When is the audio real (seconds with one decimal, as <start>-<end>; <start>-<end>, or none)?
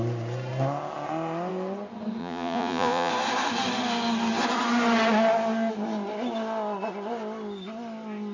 0.0-2.2; 3.1-8.3